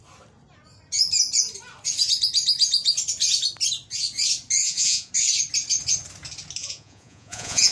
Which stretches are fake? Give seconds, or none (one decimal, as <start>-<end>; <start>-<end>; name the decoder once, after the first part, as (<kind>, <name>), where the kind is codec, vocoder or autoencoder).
4.6-5.1 (vocoder, Vocos); 6.6-7.7